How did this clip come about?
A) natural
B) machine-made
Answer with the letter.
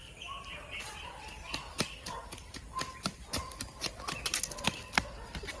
A